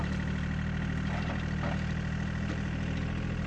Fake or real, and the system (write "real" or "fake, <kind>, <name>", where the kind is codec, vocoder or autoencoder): real